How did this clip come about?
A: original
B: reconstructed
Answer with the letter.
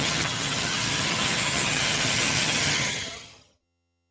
B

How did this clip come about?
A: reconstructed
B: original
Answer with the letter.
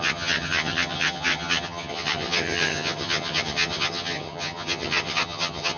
A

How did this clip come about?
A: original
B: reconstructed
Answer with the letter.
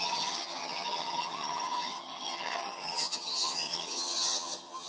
B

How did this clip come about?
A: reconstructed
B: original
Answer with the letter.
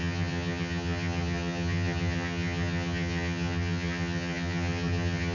A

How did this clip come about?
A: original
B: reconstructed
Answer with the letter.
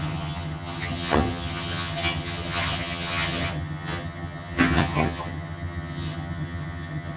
B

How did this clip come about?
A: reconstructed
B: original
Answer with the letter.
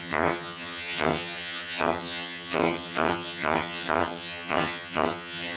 A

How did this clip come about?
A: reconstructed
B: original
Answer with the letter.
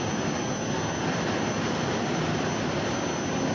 B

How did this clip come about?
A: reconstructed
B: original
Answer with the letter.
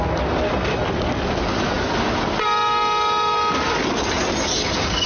B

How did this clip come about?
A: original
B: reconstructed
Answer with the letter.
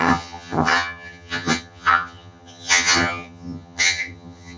B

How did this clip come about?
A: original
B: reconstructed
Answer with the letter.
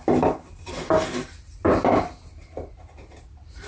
A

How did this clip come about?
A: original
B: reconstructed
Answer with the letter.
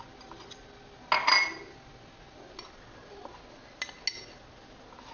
A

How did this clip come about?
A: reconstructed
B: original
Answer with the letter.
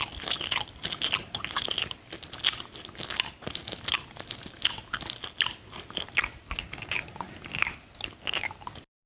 B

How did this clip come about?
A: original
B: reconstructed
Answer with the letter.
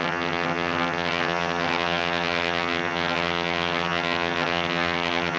B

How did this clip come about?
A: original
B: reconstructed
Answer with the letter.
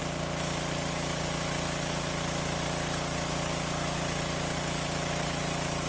A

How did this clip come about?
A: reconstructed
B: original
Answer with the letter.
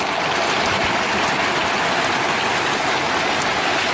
B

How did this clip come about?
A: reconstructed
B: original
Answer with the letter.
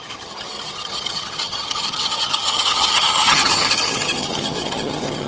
A